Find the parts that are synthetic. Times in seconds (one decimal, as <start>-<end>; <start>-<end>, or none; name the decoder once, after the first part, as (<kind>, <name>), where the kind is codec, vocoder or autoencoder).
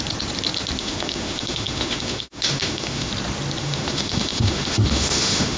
0.8-3.1 (autoencoder, DAC-VAE); 3.6-5.6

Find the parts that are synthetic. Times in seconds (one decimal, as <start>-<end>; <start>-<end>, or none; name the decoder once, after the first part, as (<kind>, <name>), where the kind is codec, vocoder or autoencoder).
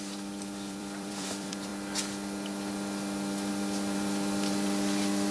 0.0-1.7 (vocoder, BigVGAN v2); 3.5-5.3